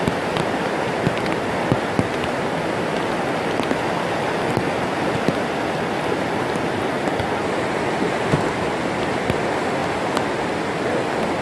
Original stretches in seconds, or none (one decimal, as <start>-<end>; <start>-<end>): 0.0-11.4